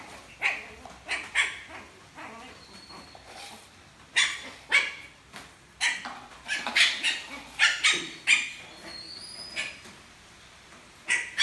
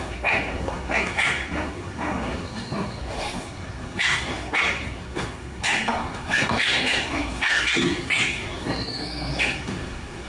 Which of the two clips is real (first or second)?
first